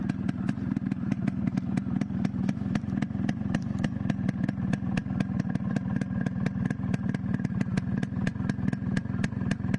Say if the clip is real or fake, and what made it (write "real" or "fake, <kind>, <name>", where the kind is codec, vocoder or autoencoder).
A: real